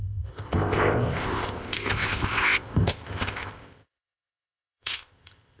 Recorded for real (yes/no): no